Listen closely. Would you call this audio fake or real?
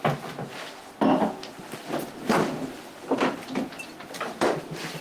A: real